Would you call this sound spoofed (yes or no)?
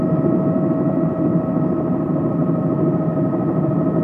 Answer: no